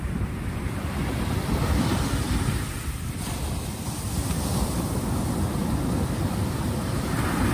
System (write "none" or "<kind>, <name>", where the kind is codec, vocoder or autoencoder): none